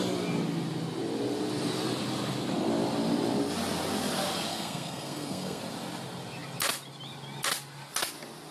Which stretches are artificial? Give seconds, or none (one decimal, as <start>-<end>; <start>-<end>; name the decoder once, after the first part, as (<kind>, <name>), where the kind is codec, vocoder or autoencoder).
4.5-5.6 (codec, SNAC)